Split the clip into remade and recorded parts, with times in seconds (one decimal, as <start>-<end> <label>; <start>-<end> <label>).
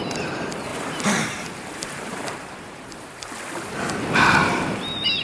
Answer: 0.0-0.7 recorded; 0.7-3.3 remade; 3.3-5.2 recorded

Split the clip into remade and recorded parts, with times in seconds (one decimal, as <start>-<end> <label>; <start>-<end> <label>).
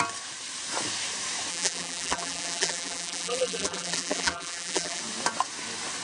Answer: 0.0-1.5 recorded; 1.5-5.0 remade; 5.0-6.0 recorded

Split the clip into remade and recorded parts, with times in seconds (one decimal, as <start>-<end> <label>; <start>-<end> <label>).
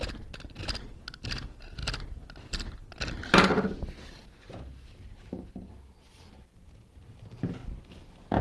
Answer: 0.0-8.4 recorded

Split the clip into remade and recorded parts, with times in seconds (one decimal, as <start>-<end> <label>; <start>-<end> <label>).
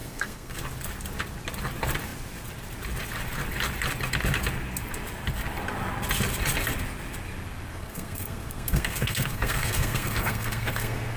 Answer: 0.0-0.6 remade; 0.6-7.7 recorded; 7.7-11.2 remade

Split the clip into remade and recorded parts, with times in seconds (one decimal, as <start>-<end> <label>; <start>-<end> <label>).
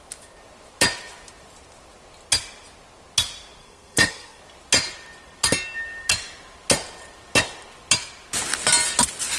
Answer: 0.0-3.6 recorded; 3.6-4.4 remade; 4.4-9.4 recorded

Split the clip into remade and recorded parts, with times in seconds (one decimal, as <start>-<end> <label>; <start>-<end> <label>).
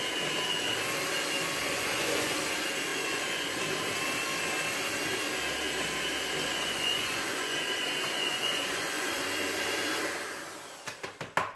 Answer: 0.0-1.6 recorded; 1.6-2.4 remade; 2.4-2.9 recorded; 2.9-3.6 remade; 3.6-6.5 recorded; 6.5-9.3 remade; 9.3-11.6 recorded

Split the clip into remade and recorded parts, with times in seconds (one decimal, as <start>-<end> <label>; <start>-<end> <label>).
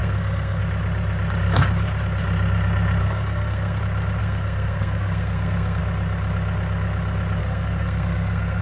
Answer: 0.0-0.6 remade; 0.6-3.0 recorded; 3.0-3.8 remade; 3.8-4.2 recorded; 4.2-5.8 remade; 5.8-7.4 recorded; 7.4-8.6 remade